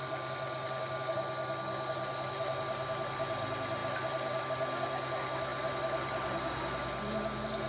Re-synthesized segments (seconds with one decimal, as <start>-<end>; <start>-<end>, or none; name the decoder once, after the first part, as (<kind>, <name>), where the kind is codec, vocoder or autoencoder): none